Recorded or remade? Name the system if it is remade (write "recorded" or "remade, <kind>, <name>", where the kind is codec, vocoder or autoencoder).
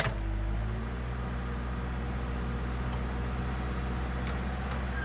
recorded